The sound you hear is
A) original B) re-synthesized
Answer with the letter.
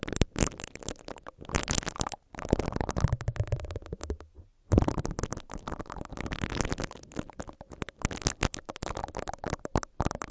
A